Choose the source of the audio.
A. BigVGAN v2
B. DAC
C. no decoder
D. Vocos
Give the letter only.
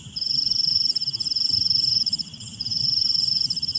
A